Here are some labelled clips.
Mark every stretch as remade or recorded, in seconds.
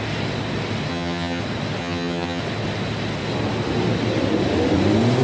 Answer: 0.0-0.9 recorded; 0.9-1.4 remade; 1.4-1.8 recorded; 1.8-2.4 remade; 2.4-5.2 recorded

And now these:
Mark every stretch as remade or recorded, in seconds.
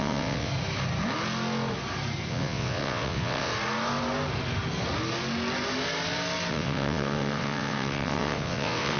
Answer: 0.0-0.5 remade; 0.5-2.3 recorded; 2.3-3.5 remade; 3.5-6.5 recorded; 6.5-9.0 remade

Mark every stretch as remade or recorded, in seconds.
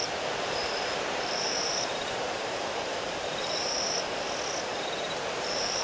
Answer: 0.0-0.6 recorded; 0.6-4.1 remade; 4.1-4.7 recorded; 4.7-5.8 remade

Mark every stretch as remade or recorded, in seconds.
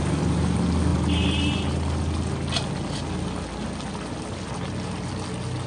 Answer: 0.0-5.7 recorded